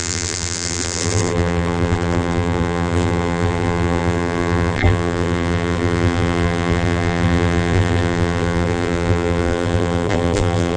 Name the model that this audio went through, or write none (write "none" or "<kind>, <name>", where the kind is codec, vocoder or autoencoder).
vocoder, BigVGAN v2